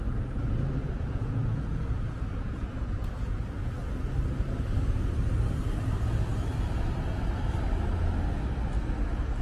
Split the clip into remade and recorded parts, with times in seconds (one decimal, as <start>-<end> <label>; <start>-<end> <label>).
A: 0.0-0.8 recorded; 0.8-3.4 remade; 3.4-9.4 recorded

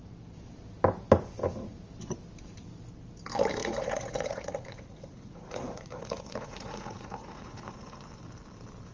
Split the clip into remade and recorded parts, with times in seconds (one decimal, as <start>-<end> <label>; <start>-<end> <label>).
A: 0.0-3.6 recorded; 3.6-8.1 remade; 8.1-8.9 recorded

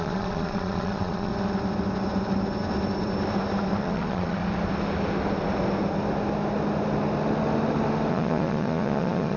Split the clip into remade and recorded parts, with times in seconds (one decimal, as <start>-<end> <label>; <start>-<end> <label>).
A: 0.0-1.3 remade; 1.3-3.8 recorded; 3.8-4.4 remade; 4.4-8.1 recorded; 8.1-9.4 remade

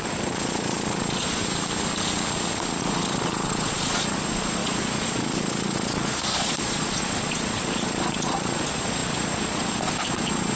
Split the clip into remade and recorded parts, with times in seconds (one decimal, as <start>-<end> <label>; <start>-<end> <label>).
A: 0.0-1.4 remade; 1.4-2.8 recorded; 2.8-10.6 remade

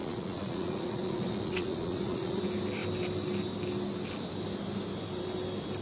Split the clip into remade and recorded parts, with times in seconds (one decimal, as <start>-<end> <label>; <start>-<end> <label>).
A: 0.0-2.4 remade; 2.4-5.8 recorded

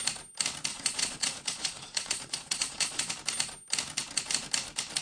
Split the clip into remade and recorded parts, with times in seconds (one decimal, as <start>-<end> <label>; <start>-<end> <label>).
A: 0.0-0.7 recorded; 0.7-3.1 remade; 3.1-5.0 recorded

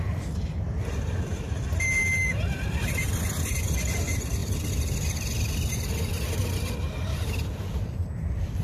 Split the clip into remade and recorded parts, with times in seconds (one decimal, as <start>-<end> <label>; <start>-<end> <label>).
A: 0.0-8.6 recorded

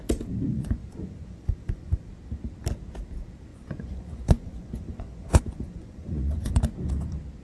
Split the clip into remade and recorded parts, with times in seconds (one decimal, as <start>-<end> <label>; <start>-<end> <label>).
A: 0.0-0.5 recorded; 0.5-2.1 remade; 2.1-3.5 recorded; 3.5-6.6 remade; 6.6-7.4 recorded